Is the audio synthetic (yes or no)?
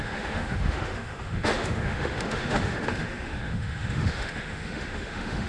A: yes